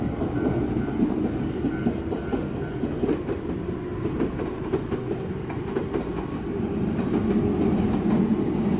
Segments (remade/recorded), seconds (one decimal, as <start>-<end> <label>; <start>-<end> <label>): 0.0-8.8 recorded